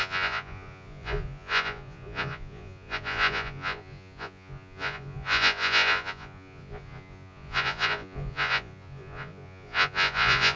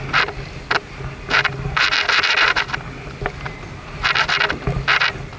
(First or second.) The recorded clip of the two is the second